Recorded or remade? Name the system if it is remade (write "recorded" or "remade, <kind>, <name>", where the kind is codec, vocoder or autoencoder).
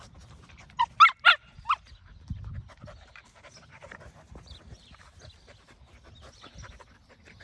recorded